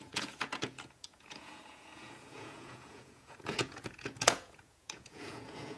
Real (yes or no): no